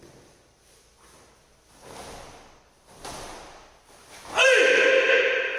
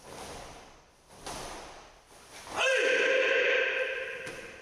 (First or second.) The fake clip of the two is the second